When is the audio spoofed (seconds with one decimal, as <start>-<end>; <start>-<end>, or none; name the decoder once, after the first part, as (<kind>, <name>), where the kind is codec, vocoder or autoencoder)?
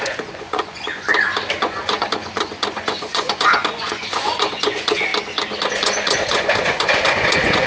0.0-1.1 (vocoder, Vocos); 1.6-5.1; 5.7-7.7